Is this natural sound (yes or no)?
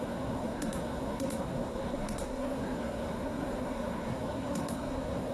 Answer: no